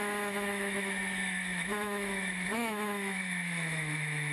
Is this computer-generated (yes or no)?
yes